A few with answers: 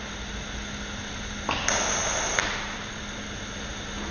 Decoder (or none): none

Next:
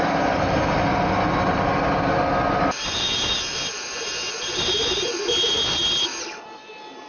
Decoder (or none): none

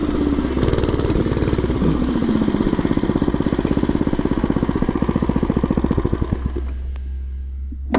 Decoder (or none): none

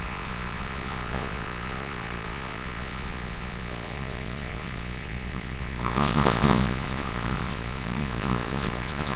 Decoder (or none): vocoder, Vocos